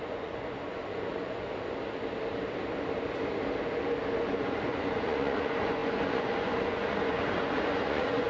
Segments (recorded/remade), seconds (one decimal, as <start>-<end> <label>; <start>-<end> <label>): 0.0-1.5 remade; 1.5-4.2 recorded; 4.2-8.3 remade